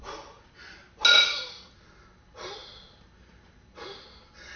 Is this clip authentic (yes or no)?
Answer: yes